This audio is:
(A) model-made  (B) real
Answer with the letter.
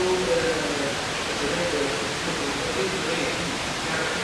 A